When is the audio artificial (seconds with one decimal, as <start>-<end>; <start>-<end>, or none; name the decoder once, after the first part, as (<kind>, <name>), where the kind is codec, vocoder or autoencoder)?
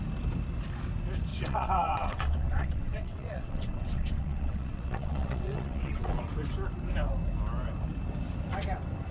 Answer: 1.3-6.2 (vocoder, WaveNeXt)